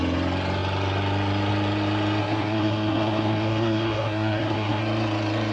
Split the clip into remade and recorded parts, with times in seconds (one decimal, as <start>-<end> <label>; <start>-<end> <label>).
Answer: 0.0-2.2 recorded; 2.2-4.8 remade; 4.8-5.5 recorded